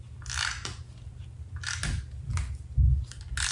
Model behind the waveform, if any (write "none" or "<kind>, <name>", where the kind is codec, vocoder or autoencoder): none